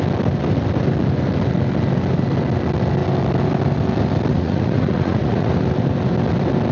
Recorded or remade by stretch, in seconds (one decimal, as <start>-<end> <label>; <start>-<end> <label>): 0.0-4.3 recorded; 4.3-5.5 remade; 5.5-6.7 recorded